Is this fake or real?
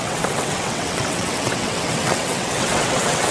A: fake